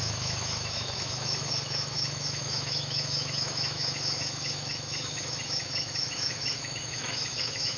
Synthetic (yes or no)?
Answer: yes